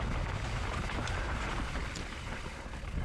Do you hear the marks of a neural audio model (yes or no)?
no